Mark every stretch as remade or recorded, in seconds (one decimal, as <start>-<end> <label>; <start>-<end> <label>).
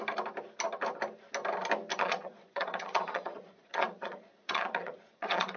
0.0-1.9 recorded; 1.9-5.6 remade